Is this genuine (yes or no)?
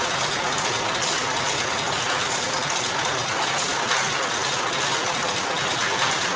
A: yes